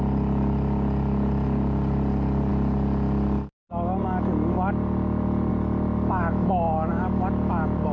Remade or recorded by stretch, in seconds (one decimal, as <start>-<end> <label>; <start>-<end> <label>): 0.0-7.9 recorded